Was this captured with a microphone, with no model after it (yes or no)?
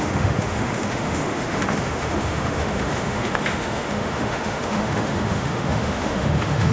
no